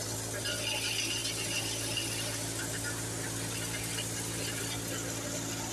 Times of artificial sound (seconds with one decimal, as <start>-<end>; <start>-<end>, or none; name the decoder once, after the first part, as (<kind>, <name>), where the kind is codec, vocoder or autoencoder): none